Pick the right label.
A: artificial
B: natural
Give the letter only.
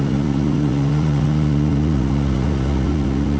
A